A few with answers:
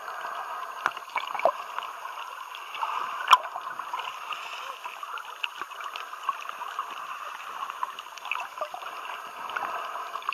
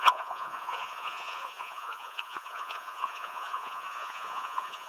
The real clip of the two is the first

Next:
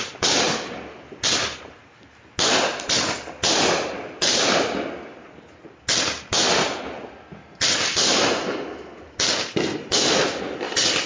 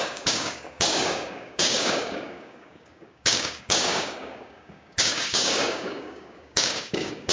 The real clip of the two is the first